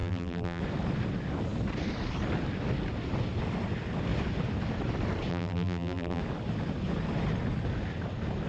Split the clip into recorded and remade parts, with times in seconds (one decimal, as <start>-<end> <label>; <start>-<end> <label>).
0.0-0.6 remade; 0.6-5.3 recorded; 5.3-6.2 remade; 6.2-8.5 recorded